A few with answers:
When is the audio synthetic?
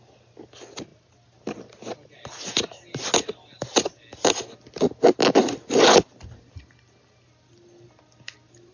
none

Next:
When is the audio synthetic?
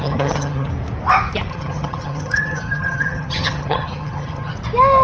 0.0-0.7; 1.5-4.5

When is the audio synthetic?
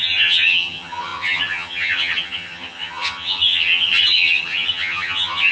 0.0-5.5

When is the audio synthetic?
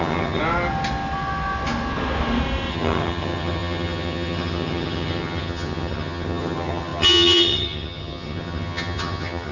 0.0-0.4; 2.7-9.5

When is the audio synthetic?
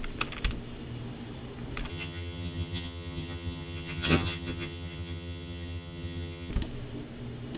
1.9-6.5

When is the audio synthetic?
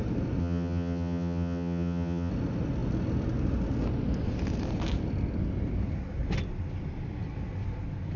0.4-2.3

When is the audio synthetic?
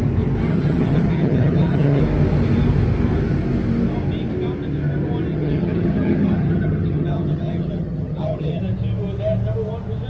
0.5-2.0; 5.3-8.6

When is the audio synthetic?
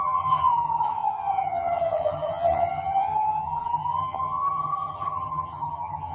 0.0-6.1